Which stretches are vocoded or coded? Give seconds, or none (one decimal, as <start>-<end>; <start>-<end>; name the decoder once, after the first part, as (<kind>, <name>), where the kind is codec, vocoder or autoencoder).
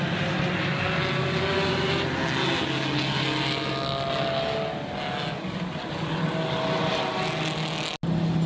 none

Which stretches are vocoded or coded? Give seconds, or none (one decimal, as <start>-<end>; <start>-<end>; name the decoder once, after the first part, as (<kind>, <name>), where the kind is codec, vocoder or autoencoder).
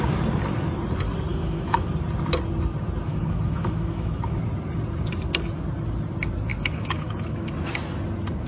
1.3-1.9 (autoencoder, DAC-VAE); 3.1-4.4; 6.5-7.5